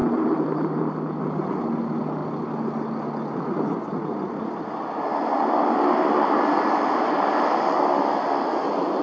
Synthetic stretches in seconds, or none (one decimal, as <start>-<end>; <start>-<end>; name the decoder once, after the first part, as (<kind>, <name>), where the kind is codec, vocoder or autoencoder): 0.0-0.8 (vocoder, BigVGAN v2)